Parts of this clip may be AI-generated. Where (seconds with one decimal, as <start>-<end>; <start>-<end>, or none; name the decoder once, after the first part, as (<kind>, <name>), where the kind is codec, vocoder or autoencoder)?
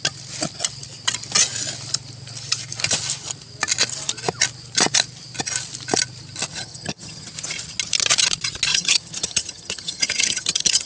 6.5-7.3 (vocoder, HiFi-GAN); 8.7-10.9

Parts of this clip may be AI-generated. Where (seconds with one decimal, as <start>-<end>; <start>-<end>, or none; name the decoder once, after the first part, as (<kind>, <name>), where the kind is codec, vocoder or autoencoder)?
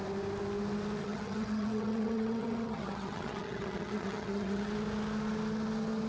1.0-4.7 (vocoder, HiFi-GAN)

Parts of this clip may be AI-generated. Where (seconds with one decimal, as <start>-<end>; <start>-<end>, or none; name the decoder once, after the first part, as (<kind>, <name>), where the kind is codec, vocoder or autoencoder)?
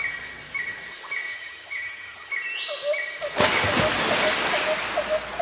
1.3-2.3 (vocoder, HiFi-GAN)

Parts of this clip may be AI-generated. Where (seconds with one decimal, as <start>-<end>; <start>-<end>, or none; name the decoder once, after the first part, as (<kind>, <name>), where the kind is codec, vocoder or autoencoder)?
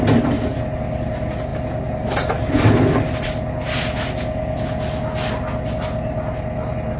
none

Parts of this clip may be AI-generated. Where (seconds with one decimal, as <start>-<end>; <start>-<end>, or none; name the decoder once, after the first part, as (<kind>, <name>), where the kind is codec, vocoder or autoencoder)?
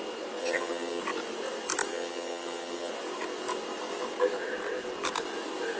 0.4-1.0 (vocoder, HiFi-GAN); 1.9-2.9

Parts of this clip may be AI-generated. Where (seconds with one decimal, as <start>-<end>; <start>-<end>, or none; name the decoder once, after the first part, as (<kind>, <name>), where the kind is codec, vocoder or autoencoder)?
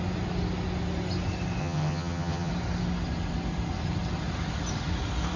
1.6-2.5 (vocoder, HiFi-GAN)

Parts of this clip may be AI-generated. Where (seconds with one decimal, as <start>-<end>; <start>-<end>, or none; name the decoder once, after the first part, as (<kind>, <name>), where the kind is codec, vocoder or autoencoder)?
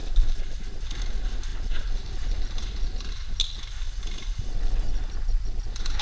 none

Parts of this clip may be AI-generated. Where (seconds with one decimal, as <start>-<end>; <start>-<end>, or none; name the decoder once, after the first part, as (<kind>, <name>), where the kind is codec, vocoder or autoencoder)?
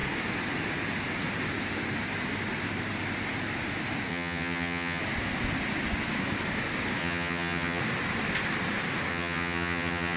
4.1-5.0 (vocoder, HiFi-GAN); 7.0-7.8; 9.1-10.2